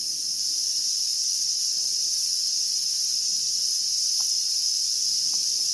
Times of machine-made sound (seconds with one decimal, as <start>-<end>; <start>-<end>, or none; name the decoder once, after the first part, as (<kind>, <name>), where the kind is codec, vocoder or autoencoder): 1.1-4.5 (vocoder, Vocos)